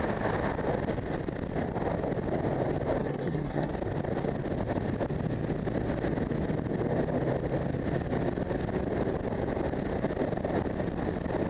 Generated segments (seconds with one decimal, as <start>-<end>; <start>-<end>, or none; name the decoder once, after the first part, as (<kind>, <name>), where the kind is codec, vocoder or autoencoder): 3.0-3.7 (codec, SNAC)